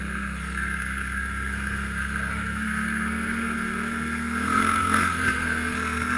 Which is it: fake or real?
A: fake